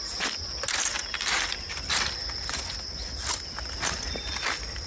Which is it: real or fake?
real